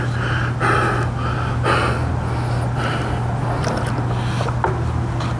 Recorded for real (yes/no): yes